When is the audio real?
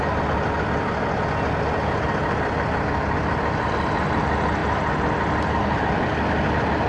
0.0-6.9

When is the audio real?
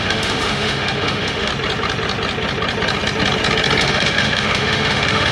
1.5-3.8